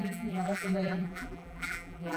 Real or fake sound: fake